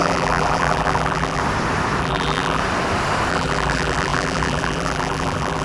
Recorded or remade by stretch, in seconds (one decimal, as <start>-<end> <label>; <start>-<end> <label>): 0.0-1.4 remade; 1.4-2.0 recorded; 2.0-2.6 remade; 2.6-3.3 recorded; 3.3-5.6 remade